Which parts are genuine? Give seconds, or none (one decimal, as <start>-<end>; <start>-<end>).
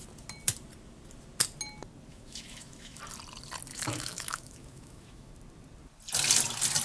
0.0-2.1; 3.0-3.7; 5.3-6.8